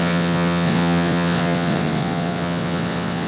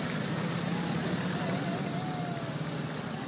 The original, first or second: second